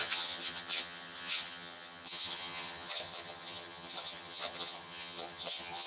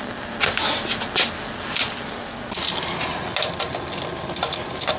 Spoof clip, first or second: first